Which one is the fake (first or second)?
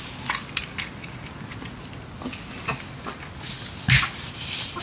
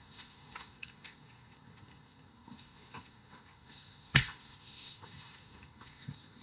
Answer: second